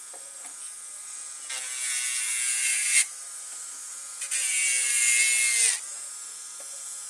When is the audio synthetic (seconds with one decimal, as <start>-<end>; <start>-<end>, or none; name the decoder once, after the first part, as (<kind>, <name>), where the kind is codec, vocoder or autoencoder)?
3.0-3.9 (autoencoder, DAC-VAE)